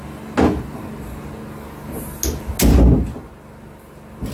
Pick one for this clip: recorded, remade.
recorded